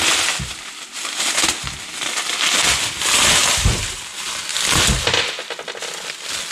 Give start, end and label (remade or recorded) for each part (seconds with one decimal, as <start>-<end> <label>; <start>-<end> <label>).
0.0-3.4 recorded; 3.4-4.0 remade; 4.0-6.5 recorded